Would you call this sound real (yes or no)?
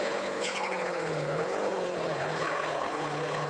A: no